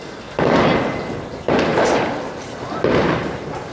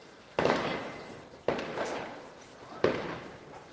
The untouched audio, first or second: first